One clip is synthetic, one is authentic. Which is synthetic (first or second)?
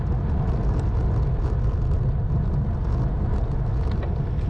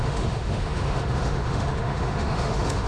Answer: second